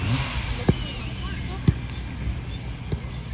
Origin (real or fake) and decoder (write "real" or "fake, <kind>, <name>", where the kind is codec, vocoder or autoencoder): real